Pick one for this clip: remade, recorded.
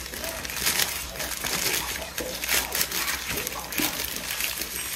remade